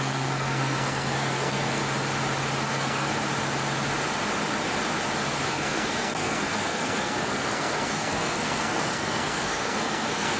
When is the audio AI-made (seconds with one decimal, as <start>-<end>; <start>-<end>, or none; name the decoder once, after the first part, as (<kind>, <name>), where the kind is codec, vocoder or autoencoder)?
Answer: 0.0-1.8 (codec, SNAC); 2.7-3.1; 5.5-10.4